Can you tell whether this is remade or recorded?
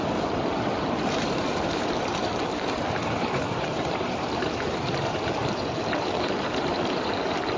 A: remade